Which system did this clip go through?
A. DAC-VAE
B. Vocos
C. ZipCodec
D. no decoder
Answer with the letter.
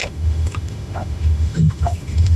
A